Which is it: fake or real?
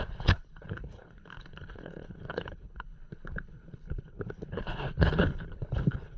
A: fake